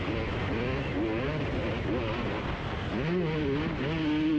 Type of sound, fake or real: real